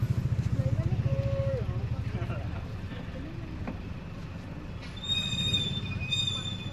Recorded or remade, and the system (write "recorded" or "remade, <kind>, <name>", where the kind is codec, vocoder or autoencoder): recorded